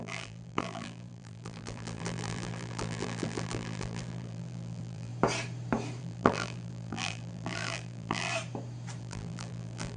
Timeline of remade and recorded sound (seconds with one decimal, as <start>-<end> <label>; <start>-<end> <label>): 0.0-5.1 remade; 5.1-6.0 recorded; 6.0-8.3 remade; 8.3-9.0 recorded; 9.0-10.0 remade